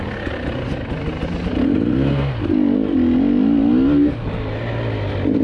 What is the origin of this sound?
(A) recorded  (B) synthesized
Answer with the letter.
A